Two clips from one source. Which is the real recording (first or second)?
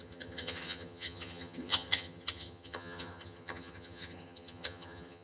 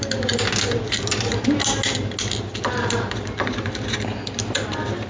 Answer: second